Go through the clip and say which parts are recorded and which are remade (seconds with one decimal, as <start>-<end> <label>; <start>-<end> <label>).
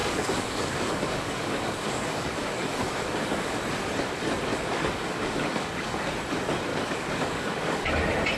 0.0-3.6 remade; 3.6-4.5 recorded; 4.5-6.1 remade; 6.1-6.7 recorded; 6.7-7.9 remade; 7.9-8.4 recorded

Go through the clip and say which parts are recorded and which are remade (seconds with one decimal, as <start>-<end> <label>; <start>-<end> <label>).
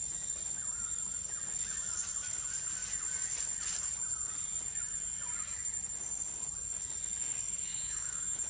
0.0-7.7 recorded; 7.7-8.5 remade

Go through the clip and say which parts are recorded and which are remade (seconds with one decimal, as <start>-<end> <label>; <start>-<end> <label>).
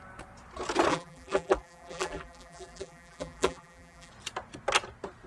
0.0-0.9 recorded; 0.9-4.1 remade; 4.1-5.3 recorded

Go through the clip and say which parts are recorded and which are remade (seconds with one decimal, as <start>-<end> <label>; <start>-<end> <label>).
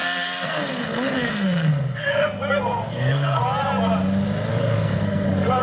0.0-3.4 remade; 3.4-4.5 recorded; 4.5-5.6 remade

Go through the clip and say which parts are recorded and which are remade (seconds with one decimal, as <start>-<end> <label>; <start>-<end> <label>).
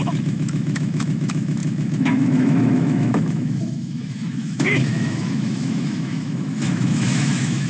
0.0-7.7 remade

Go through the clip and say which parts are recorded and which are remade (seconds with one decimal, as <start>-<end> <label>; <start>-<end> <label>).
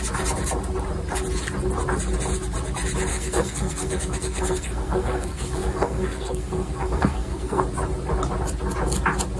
0.0-3.1 recorded; 3.1-7.6 remade; 7.6-9.4 recorded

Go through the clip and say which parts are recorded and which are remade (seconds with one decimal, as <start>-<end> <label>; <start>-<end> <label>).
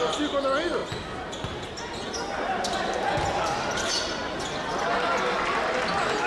0.0-6.3 recorded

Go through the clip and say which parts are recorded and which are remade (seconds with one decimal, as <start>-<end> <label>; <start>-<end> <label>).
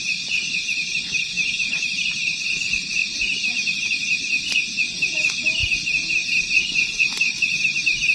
0.0-5.6 remade; 5.6-6.5 recorded; 6.5-8.1 remade